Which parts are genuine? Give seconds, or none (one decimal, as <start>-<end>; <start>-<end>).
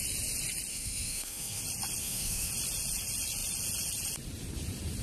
0.0-0.7; 1.6-2.0; 2.5-5.0